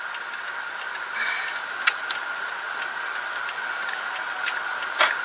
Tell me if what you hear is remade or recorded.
recorded